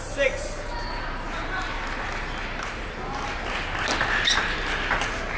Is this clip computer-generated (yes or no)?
no